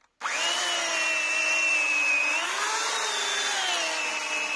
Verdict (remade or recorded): recorded